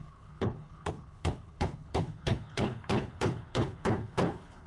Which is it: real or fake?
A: fake